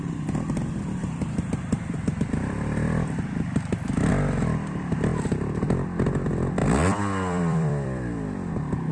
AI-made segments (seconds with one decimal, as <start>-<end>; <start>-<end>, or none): 1.0-4.1; 6.6-8.5